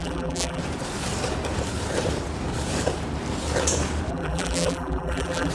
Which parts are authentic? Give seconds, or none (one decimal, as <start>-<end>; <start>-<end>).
0.6-4.1